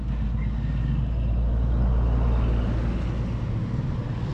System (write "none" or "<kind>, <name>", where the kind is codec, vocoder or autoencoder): none